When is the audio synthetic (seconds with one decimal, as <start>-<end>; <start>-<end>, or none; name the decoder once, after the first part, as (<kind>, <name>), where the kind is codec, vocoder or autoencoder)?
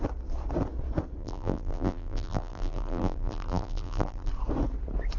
1.2-4.3 (vocoder, BigVGAN v2)